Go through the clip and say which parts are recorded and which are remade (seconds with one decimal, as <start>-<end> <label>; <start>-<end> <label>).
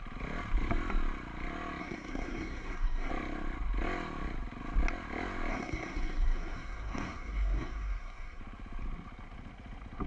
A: 0.0-1.8 recorded; 1.8-3.1 remade; 3.1-5.5 recorded; 5.5-8.4 remade; 8.4-10.1 recorded